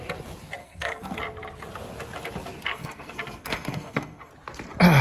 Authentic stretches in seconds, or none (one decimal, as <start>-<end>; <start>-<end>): 0.0-0.6; 1.2-2.7; 4.3-5.0